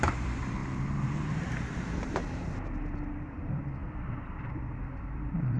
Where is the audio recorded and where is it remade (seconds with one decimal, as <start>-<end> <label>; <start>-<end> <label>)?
0.0-0.6 remade; 0.6-1.3 recorded; 1.3-2.2 remade; 2.2-3.2 recorded; 3.2-5.6 remade